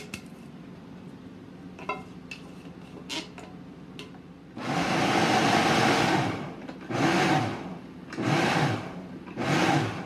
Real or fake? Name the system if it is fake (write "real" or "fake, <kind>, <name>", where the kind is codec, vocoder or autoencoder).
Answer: real